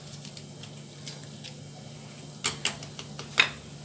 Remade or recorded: recorded